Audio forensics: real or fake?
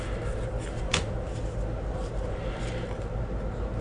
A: real